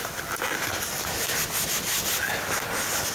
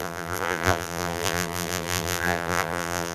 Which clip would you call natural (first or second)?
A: first